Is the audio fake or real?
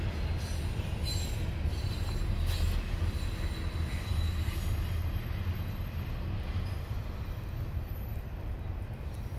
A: real